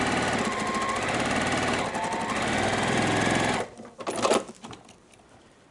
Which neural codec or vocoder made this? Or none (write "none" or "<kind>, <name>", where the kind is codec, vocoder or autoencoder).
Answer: none